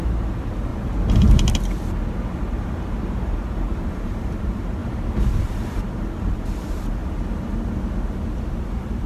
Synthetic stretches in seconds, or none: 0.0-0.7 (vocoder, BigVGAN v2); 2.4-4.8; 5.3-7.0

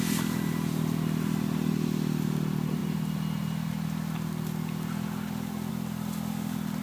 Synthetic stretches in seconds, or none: none